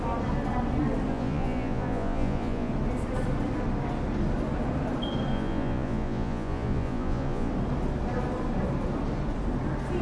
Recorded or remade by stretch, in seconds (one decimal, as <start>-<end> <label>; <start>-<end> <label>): 0.0-1.1 recorded; 1.1-2.7 remade; 2.7-5.3 recorded; 5.3-7.5 remade; 7.5-10.0 recorded